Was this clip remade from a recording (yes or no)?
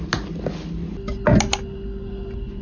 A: no